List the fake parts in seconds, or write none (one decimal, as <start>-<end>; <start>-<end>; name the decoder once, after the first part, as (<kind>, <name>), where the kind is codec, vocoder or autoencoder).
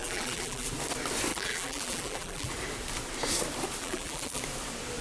0.0-0.7 (vocoder, BigVGAN v2); 1.3-2.5; 3.8-4.4